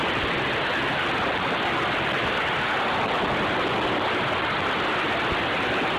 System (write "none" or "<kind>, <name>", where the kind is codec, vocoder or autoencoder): none